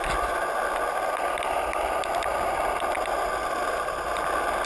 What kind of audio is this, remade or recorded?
recorded